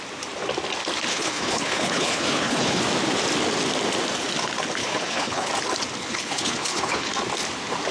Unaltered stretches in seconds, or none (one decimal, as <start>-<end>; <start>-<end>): 0.0-1.1; 2.8-4.8; 5.5-6.0; 7.1-7.9